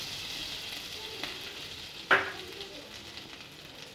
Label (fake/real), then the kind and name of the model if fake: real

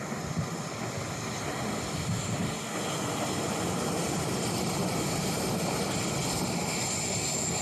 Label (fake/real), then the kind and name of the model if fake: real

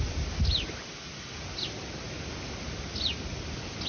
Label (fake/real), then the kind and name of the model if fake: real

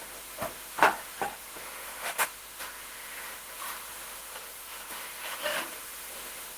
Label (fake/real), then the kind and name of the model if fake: fake, autoencoder, DAC-VAE